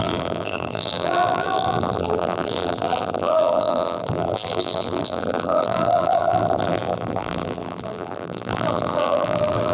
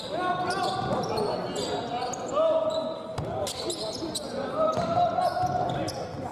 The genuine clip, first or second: second